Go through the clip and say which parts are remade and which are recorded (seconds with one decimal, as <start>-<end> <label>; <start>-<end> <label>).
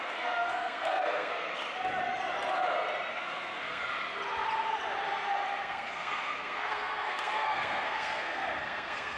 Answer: 0.0-1.5 remade; 1.5-3.1 recorded; 3.1-3.8 remade; 3.8-5.6 recorded; 5.6-9.2 remade